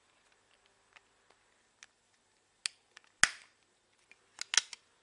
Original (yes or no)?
yes